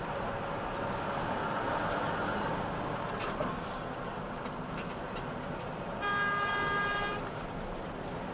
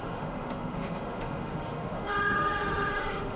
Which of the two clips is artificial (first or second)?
second